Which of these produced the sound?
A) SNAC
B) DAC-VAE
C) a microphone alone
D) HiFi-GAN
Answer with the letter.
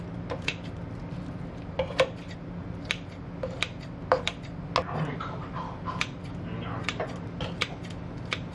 C